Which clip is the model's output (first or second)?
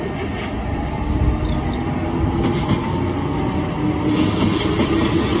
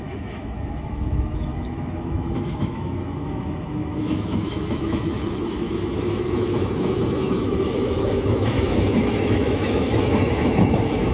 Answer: second